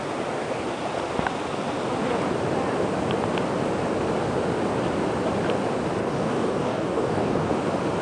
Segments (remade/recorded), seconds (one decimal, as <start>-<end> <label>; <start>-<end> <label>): 0.0-6.0 recorded; 6.0-7.5 remade; 7.5-8.0 recorded